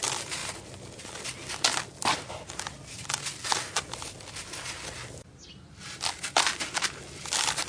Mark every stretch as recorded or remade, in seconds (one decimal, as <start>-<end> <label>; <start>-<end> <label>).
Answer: 0.0-7.7 recorded